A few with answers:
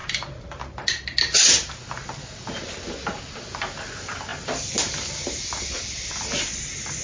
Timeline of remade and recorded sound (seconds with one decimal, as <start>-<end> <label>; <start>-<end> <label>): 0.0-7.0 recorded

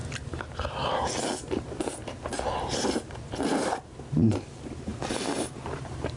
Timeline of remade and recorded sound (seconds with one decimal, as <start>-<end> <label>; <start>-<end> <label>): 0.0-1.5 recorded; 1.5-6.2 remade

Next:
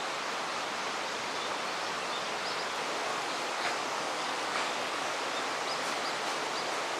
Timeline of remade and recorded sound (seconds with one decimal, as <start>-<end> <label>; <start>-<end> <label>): 0.0-3.1 recorded; 3.1-5.2 remade; 5.2-7.0 recorded

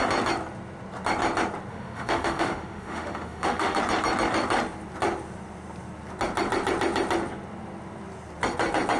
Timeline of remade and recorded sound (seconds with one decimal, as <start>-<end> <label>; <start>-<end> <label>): 0.0-1.7 recorded; 1.7-3.8 remade; 3.8-9.0 recorded

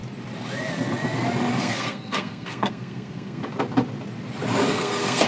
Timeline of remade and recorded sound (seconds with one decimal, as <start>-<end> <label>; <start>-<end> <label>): 0.0-1.6 recorded; 1.6-3.4 remade; 3.4-4.7 recorded; 4.7-5.3 remade